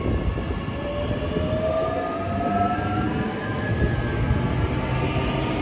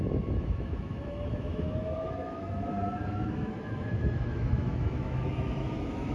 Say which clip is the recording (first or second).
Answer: first